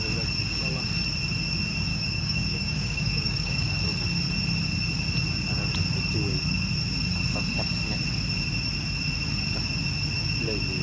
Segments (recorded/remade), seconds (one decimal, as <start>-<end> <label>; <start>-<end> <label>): 0.0-1.9 recorded; 1.9-3.7 remade; 3.7-10.8 recorded